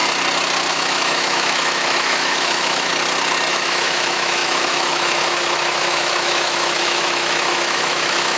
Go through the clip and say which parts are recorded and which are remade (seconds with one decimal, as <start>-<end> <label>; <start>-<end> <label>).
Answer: 0.0-0.7 recorded; 0.7-2.9 remade; 2.9-3.5 recorded; 3.5-8.4 remade